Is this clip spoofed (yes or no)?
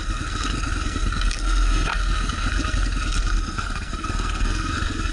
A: yes